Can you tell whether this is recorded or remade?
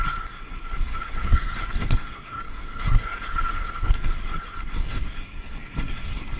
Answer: remade